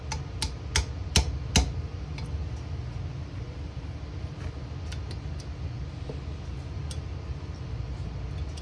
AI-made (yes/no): no